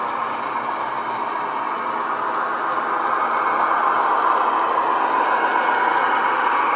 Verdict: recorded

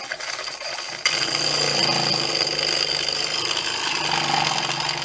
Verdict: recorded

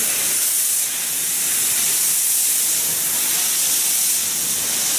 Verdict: recorded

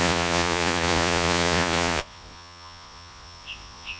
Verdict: remade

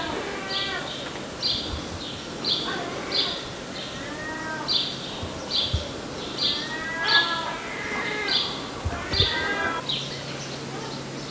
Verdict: recorded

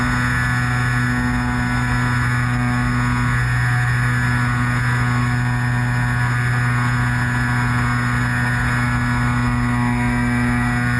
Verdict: recorded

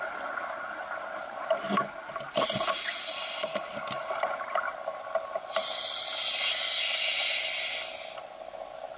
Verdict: recorded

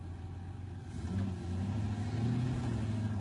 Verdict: recorded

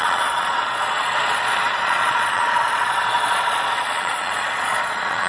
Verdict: remade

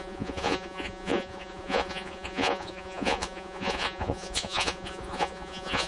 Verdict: remade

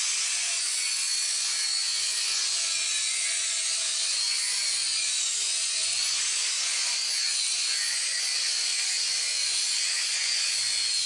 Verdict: remade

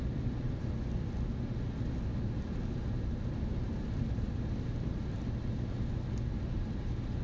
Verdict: recorded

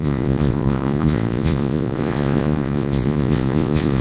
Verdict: remade